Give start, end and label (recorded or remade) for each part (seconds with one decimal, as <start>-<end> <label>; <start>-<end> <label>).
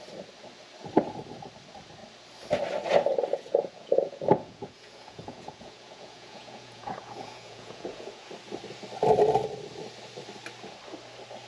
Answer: 0.0-3.3 recorded; 3.3-8.3 remade; 8.3-11.5 recorded